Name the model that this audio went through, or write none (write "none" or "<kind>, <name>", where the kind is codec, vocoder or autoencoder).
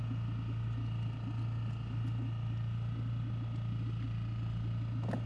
none